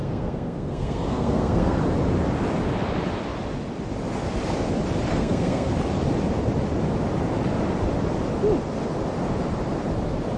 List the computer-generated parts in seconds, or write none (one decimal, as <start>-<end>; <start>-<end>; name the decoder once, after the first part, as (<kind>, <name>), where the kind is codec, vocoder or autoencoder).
0.0-1.8 (codec, SNAC); 5.1-5.7